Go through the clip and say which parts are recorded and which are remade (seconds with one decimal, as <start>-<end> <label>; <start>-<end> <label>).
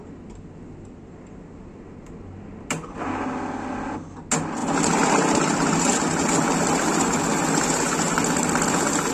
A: 0.0-9.1 recorded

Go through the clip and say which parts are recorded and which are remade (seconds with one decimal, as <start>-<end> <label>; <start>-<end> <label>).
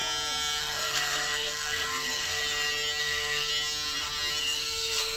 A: 0.0-0.6 recorded; 0.6-2.4 remade; 2.4-3.0 recorded; 3.0-3.5 remade; 3.5-4.4 recorded; 4.4-5.2 remade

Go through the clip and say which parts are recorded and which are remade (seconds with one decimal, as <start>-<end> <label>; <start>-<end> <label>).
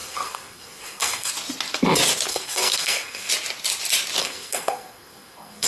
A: 0.0-1.3 remade; 1.3-2.3 recorded; 2.3-3.3 remade; 3.3-4.2 recorded; 4.2-5.7 remade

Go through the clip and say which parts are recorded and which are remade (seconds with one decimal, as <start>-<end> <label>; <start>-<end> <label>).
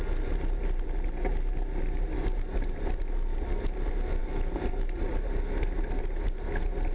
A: 0.0-6.9 recorded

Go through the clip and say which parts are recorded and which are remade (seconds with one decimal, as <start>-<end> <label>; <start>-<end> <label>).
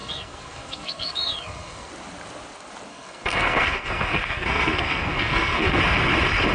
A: 0.0-1.9 remade; 1.9-2.9 recorded; 2.9-5.8 remade; 5.8-6.5 recorded